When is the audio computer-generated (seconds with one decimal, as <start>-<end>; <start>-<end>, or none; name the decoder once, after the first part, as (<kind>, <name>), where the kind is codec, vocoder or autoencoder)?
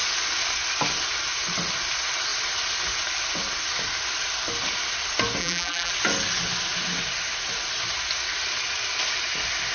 5.4-5.9 (vocoder, BigVGAN v2)